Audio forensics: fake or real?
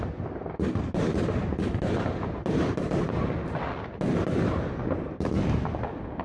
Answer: real